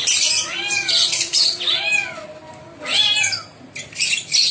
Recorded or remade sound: recorded